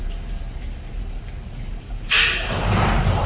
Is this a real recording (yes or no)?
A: no